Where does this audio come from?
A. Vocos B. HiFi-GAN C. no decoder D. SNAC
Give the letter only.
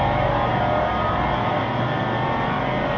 C